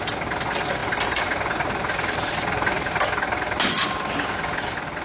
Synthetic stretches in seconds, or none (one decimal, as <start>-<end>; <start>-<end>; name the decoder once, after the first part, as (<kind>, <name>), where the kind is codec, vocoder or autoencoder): 0.8-3.0 (vocoder, BigVGAN v2)